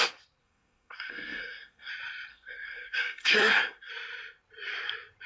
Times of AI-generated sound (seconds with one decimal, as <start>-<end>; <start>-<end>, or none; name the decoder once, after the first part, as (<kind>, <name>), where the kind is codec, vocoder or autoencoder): 0.4-1.9 (codec, SNAC); 2.3-3.9